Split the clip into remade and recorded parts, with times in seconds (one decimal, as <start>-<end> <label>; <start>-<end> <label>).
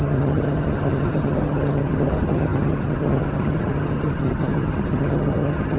0.0-5.8 remade